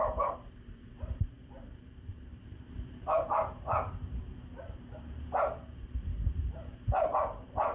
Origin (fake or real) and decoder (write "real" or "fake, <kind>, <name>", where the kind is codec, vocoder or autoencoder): fake, vocoder, BigVGAN v2